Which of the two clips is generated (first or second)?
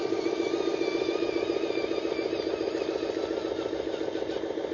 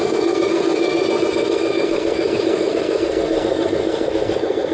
second